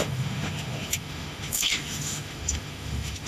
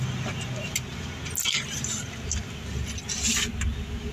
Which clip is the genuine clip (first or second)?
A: second